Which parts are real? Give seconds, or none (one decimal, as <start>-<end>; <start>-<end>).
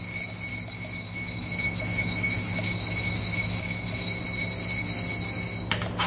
0.0-0.5; 4.2-6.1